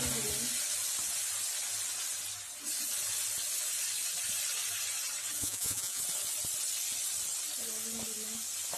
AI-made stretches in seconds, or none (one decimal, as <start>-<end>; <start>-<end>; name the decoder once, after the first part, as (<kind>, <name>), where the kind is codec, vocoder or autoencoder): 5.4-6.0 (vocoder, Vocos)